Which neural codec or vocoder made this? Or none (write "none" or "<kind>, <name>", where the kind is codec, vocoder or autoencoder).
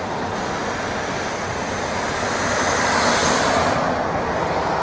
none